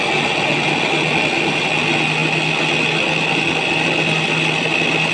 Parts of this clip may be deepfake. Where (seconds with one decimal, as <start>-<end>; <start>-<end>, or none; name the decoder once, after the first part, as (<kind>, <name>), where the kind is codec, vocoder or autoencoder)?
none